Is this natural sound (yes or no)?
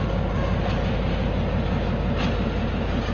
yes